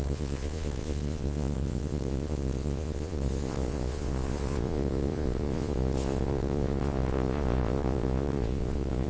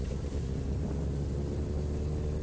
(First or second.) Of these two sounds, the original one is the second